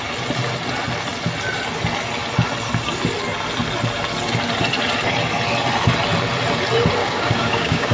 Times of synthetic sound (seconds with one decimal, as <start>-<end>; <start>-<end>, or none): 7.0-7.9